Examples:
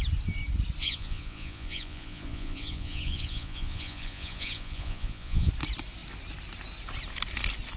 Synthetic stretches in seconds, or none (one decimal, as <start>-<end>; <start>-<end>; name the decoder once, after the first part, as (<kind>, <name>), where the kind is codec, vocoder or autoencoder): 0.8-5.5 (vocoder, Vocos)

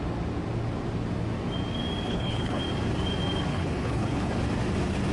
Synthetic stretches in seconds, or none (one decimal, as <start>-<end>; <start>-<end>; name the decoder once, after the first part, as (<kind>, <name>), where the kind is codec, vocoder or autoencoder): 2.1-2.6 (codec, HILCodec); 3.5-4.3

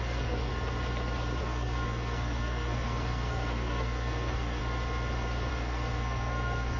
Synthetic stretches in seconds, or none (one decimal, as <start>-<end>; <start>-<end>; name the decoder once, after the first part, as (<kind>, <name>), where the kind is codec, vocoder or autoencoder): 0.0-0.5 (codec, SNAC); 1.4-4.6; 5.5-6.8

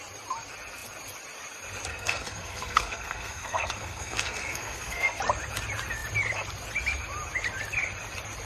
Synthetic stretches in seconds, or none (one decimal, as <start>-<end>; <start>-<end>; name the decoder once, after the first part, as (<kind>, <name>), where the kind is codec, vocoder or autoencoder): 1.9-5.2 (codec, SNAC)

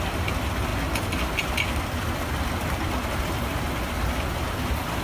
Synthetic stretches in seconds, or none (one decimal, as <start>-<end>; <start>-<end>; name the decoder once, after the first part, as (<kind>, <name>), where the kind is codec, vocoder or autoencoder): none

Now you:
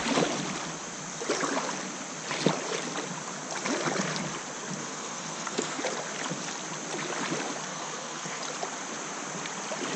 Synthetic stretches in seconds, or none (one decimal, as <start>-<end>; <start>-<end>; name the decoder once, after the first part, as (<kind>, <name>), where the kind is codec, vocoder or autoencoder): 4.8-5.8 (codec, SNAC); 7.7-8.4

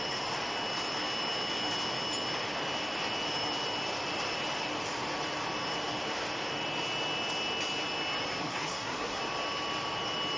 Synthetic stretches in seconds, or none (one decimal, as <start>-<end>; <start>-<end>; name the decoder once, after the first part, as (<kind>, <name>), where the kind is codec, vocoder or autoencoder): 8.4-9.2 (codec, SNAC)